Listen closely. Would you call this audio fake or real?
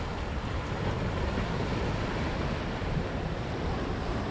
real